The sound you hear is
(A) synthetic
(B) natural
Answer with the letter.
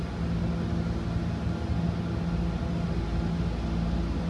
B